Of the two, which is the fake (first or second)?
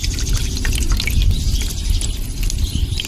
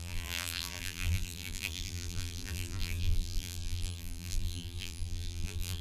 second